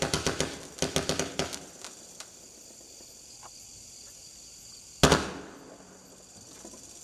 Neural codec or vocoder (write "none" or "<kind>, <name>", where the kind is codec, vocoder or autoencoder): none